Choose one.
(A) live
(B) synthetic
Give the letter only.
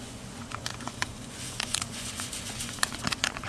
B